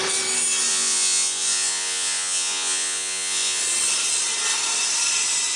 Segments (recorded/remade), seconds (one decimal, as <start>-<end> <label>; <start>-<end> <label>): 0.0-0.7 recorded; 0.7-3.6 remade; 3.6-5.6 recorded